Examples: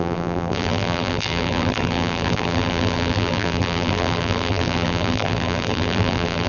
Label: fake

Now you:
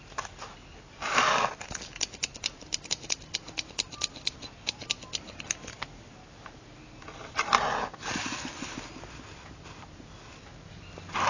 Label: real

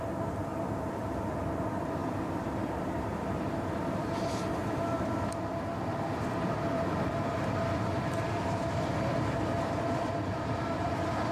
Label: fake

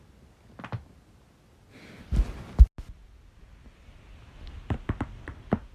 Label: real